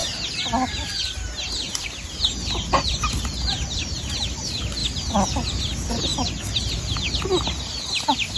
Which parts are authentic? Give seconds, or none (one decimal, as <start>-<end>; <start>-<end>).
0.0-2.5; 4.8-5.6; 6.1-7.4